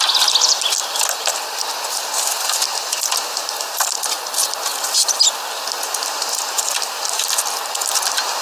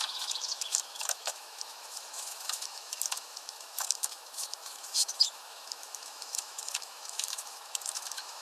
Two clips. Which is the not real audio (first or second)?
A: second